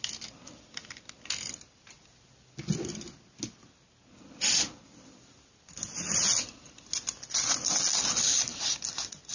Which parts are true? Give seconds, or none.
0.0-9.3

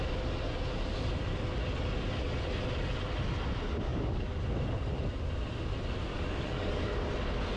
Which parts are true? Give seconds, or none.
0.0-3.9; 4.4-6.1; 7.1-7.6